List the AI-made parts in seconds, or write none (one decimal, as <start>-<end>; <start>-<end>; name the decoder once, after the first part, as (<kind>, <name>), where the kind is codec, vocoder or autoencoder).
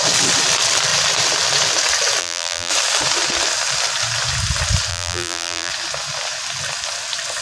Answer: 2.2-2.7 (vocoder, BigVGAN v2); 4.9-5.7